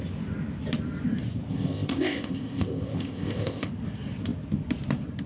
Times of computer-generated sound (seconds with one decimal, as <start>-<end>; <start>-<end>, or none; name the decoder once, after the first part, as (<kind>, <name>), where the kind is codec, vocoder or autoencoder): 1.5-3.7 (codec, ZipCodec)